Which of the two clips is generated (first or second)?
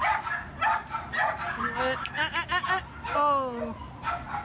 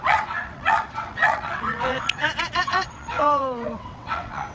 second